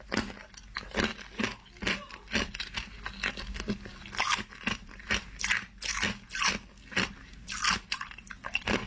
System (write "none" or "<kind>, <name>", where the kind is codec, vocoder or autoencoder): none